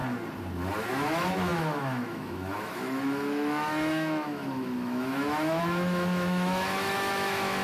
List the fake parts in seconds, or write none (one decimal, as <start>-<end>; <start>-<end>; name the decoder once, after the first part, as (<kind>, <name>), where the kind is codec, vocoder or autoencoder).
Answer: 0.9-7.6 (autoencoder, DAC-VAE)